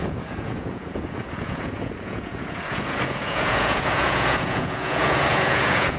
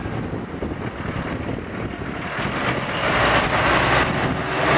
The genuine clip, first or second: second